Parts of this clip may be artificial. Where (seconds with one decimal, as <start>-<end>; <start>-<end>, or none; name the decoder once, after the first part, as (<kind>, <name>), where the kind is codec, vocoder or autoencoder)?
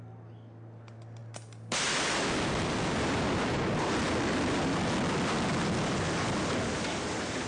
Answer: 1.2-4.8 (vocoder, BigVGAN v2)